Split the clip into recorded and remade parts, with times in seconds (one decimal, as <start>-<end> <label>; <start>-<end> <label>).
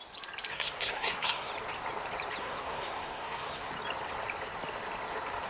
0.0-0.5 recorded; 0.5-1.5 remade; 1.5-2.4 recorded; 2.4-3.7 remade; 3.7-5.5 recorded